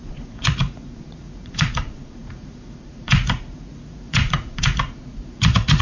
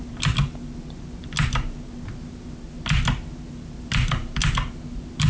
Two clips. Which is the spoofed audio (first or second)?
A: first